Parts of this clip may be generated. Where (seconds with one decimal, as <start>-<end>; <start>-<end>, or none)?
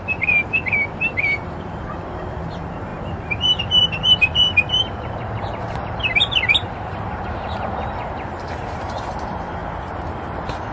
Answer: 0.0-9.6